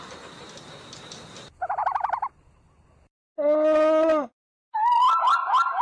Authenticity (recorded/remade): recorded